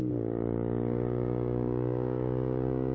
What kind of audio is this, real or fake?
fake